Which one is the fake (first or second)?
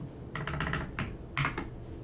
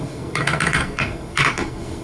second